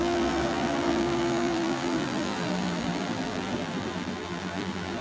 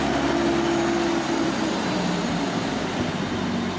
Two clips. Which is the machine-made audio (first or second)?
first